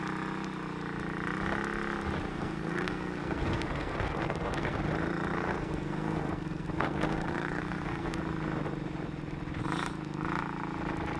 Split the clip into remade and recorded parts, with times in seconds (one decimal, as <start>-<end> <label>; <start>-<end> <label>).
0.0-2.3 recorded; 2.3-4.8 remade; 4.8-5.3 recorded; 5.3-8.2 remade; 8.2-11.2 recorded